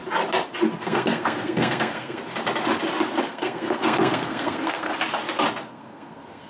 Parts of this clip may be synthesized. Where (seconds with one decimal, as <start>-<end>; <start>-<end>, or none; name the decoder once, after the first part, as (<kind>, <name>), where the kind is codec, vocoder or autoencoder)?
0.7-2.2 (codec, SNAC); 3.2-4.9; 5.7-6.5